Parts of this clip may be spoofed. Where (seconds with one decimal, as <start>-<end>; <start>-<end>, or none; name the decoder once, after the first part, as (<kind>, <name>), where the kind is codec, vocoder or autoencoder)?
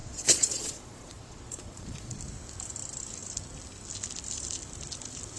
0.0-2.2 (vocoder, Vocos)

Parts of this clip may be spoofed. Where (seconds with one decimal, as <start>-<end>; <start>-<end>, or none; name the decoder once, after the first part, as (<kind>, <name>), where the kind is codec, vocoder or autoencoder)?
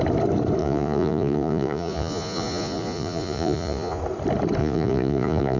0.6-4.0 (vocoder, Vocos); 4.6-5.6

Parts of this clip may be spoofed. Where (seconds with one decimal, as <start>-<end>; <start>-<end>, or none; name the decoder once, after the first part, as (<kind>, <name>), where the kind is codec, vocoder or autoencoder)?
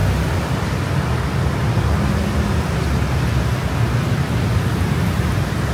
none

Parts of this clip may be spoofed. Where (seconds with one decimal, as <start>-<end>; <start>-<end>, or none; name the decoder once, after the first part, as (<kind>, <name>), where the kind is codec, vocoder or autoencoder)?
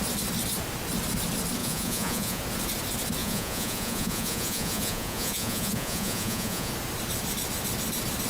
1.6-2.4 (vocoder, Vocos); 3.2-6.7